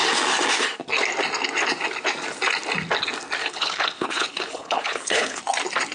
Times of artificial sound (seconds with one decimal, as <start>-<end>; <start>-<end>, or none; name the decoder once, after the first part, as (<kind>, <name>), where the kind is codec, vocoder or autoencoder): 3.4-5.4 (codec, HILCodec)